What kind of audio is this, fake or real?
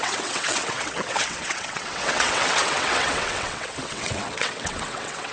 fake